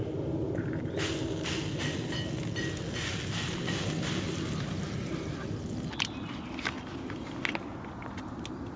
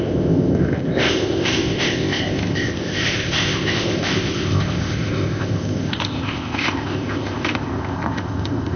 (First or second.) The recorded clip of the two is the first